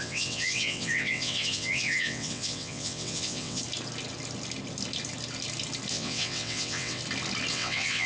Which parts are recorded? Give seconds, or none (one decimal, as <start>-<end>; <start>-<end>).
3.6-5.9; 7.0-7.5